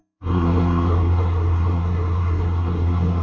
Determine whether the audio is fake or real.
fake